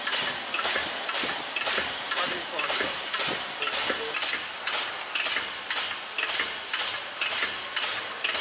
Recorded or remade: recorded